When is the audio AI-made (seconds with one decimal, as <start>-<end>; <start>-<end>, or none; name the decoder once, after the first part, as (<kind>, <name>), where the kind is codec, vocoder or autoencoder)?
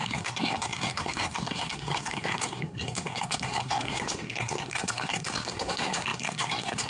0.0-6.9 (codec, SNAC)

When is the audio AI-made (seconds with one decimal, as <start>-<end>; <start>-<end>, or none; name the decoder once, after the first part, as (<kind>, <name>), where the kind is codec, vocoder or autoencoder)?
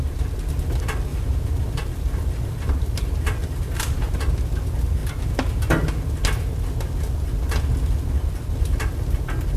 1.1-4.2 (vocoder, BigVGAN v2)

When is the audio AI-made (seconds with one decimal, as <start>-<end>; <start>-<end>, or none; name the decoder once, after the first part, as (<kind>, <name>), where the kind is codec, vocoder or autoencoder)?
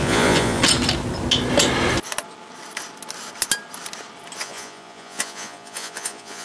0.0-0.6 (vocoder, Vocos); 4.4-6.4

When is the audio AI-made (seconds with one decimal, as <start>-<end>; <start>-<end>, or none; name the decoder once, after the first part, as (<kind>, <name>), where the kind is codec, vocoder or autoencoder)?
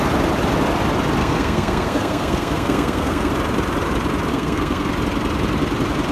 1.2-3.3 (codec, SNAC); 4.3-4.9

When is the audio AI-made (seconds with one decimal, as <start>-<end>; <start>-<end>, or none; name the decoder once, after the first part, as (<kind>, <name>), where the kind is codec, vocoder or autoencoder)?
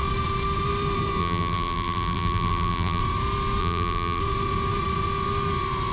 1.2-3.0 (vocoder, BigVGAN v2); 3.6-4.2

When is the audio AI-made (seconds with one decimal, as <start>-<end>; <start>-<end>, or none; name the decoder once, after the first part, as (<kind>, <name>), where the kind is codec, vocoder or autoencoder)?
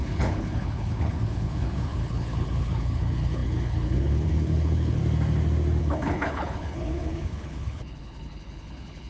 0.0-5.0 (codec, HILCodec); 5.8-9.1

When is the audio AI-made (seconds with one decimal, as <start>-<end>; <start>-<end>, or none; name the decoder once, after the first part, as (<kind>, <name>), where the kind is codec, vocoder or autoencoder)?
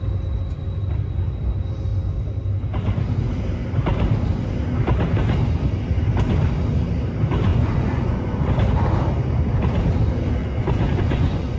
7.5-8.5 (vocoder, Vocos); 10.4-11.6